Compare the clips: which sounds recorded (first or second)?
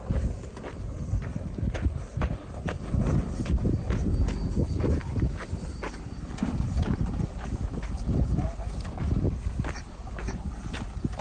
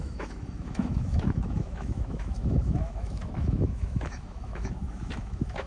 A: first